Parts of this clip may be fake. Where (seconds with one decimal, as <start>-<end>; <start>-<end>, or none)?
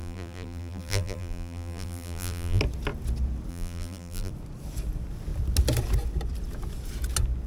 0.0-2.6; 3.5-4.3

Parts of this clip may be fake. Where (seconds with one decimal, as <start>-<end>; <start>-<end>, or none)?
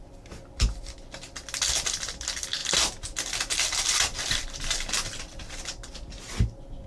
none